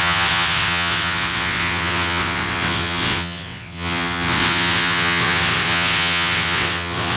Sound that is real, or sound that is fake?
fake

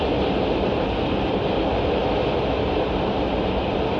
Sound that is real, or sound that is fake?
real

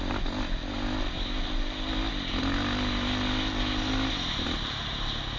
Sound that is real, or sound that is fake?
real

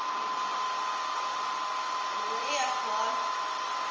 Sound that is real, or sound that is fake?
real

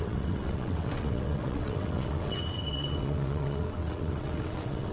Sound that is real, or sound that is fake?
fake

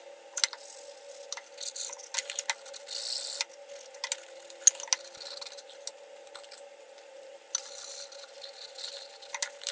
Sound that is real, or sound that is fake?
real